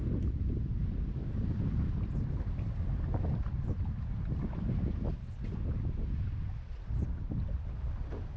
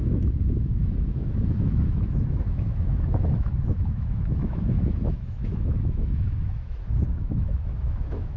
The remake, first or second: second